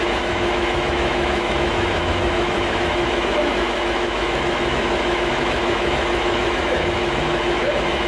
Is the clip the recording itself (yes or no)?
no